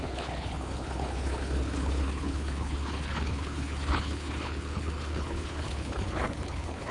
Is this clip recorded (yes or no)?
no